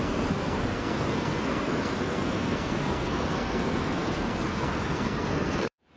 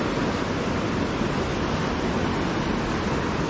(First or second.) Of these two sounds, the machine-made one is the first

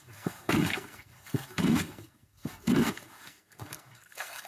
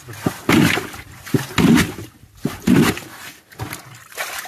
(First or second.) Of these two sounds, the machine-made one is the first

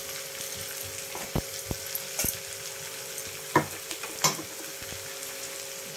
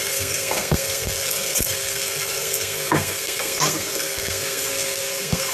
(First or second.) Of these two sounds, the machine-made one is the second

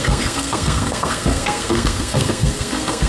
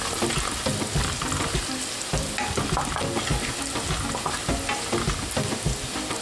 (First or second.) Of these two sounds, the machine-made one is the first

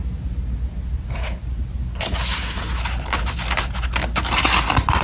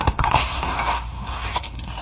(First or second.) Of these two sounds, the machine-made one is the second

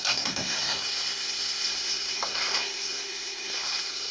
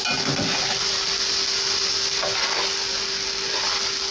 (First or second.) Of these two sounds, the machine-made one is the first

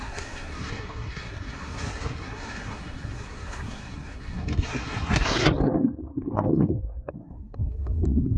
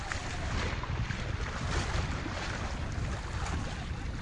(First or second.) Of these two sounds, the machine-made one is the first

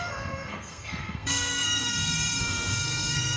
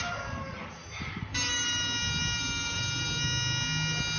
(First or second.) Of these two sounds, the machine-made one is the first